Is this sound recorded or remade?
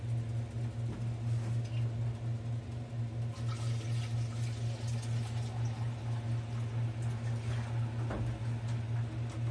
recorded